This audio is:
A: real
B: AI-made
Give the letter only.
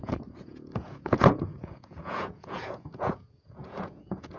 B